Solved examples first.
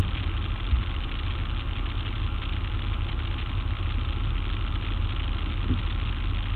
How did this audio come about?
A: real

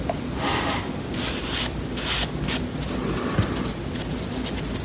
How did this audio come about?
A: real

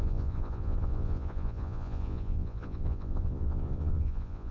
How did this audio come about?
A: fake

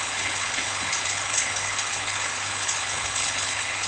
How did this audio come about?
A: fake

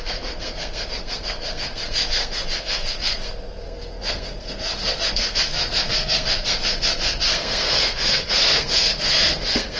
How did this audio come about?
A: fake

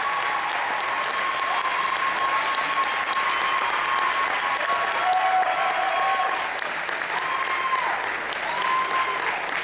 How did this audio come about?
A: real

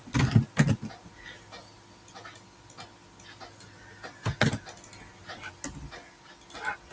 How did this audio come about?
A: real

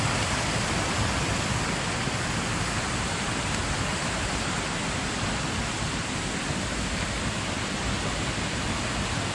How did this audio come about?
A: real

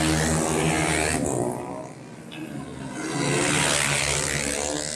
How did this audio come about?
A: real